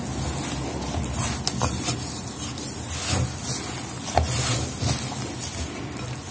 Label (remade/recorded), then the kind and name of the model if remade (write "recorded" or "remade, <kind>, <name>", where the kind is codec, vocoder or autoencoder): recorded